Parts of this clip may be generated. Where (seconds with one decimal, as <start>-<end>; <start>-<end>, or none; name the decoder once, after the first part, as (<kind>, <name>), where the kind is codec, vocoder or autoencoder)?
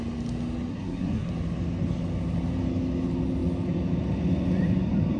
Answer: 0.7-1.3 (codec, SNAC)